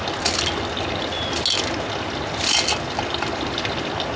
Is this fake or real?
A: real